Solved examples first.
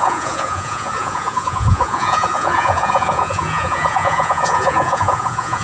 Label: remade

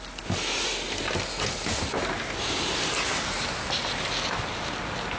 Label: recorded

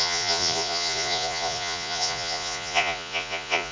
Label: remade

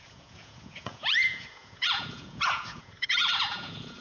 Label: remade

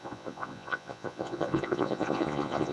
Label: remade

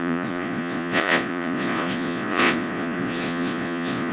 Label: remade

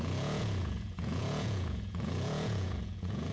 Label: remade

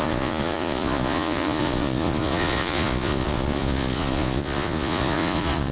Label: remade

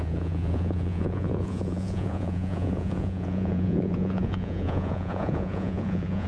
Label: remade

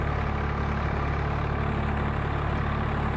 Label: recorded